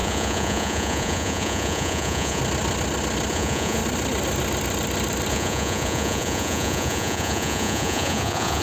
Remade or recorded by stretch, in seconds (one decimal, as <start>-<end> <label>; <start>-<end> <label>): 0.0-2.4 remade; 2.4-3.3 recorded; 3.3-3.8 remade; 3.8-5.3 recorded; 5.3-8.6 remade